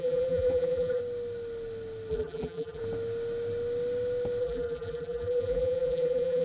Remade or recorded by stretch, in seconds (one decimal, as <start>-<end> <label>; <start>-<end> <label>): 0.0-1.0 remade; 1.0-2.1 recorded; 2.1-2.8 remade; 2.8-4.4 recorded; 4.4-6.4 remade